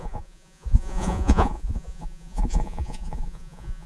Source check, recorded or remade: remade